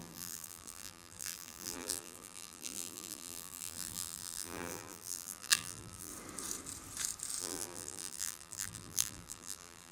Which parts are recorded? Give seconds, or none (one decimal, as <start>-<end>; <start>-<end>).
6.1-7.4